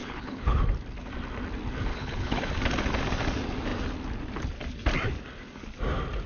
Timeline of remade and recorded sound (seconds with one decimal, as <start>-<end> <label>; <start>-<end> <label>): 0.0-0.6 remade; 0.6-1.9 recorded; 1.9-2.5 remade; 2.5-6.3 recorded